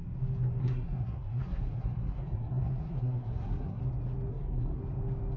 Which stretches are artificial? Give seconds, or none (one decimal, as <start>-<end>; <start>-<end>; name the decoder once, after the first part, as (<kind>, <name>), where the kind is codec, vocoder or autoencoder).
0.6-3.8 (codec, SNAC); 4.3-4.8